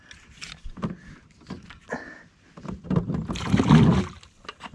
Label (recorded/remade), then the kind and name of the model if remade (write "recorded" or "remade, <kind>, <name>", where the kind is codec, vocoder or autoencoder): recorded